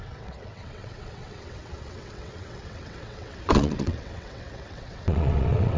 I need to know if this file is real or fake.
fake